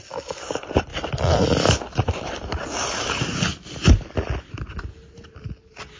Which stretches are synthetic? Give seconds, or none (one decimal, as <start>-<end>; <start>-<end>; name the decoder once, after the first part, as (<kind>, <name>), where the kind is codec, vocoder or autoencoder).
none